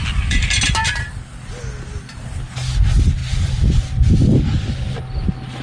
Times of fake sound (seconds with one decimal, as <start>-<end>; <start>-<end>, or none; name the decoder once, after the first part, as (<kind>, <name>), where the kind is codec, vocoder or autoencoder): none